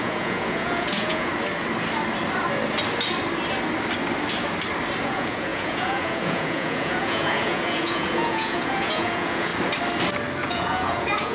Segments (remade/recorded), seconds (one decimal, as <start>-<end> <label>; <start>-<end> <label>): 0.0-1.3 remade; 1.3-5.0 recorded; 5.0-9.5 remade; 9.5-10.5 recorded; 10.5-11.3 remade